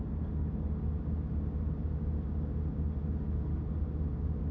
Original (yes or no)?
yes